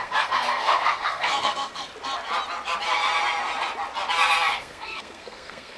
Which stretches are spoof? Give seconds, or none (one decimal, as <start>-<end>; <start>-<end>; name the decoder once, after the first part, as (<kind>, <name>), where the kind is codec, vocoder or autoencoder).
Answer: 0.0-1.9 (codec, SNAC); 4.5-5.8